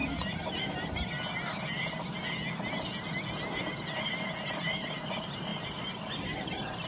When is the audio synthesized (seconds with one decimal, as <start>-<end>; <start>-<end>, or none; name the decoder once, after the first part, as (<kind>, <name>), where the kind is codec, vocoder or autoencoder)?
4.1-5.5 (vocoder, BigVGAN v2); 6.1-6.9